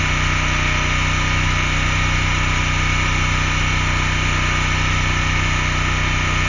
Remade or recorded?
recorded